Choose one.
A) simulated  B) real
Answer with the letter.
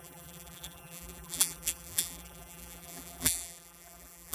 A